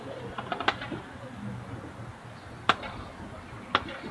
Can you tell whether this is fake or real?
real